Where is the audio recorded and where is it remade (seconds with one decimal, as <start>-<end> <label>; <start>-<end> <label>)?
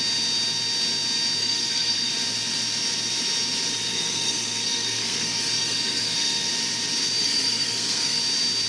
0.0-1.4 recorded; 1.4-2.1 remade; 2.1-3.9 recorded; 3.9-6.5 remade; 6.5-7.2 recorded; 7.2-8.2 remade; 8.2-8.7 recorded